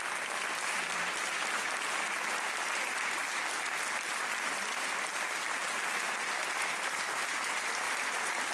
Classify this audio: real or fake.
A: real